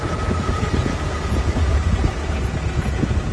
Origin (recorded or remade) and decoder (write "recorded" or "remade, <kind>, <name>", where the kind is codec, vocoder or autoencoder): remade, vocoder, Vocos